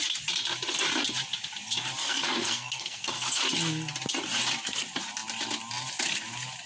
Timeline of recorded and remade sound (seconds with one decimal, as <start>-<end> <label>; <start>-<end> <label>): 0.0-2.0 recorded; 2.0-3.4 remade; 3.4-6.7 recorded